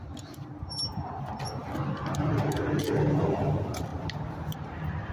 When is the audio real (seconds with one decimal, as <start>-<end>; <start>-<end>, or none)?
0.0-3.9